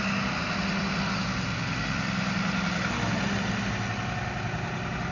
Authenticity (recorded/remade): recorded